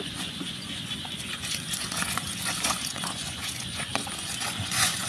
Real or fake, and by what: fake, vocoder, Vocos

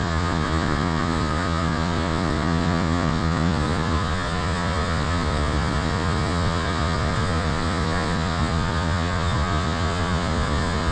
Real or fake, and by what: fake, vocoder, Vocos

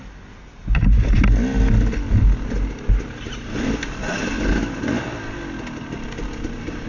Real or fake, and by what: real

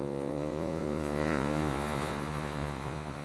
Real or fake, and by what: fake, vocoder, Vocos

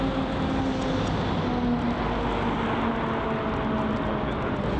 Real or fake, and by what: real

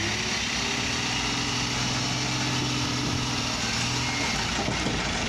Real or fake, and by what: real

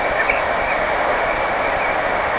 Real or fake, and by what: real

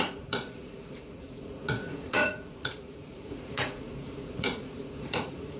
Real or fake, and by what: fake, vocoder, Vocos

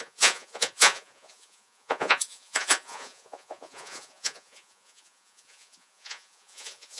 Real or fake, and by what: fake, vocoder, Vocos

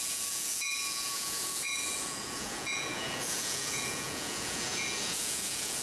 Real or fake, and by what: fake, vocoder, Vocos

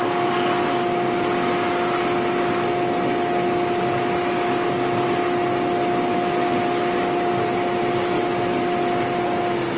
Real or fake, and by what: real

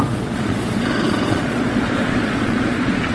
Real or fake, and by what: fake, vocoder, Vocos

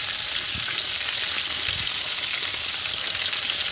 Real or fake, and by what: real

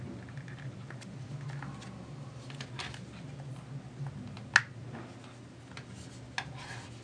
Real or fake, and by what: real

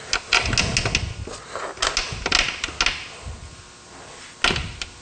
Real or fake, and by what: real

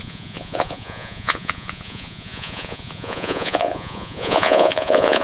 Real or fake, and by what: fake, vocoder, Vocos